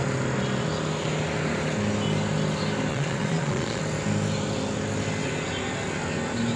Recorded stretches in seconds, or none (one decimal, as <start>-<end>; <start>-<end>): 0.0-2.9; 3.8-6.6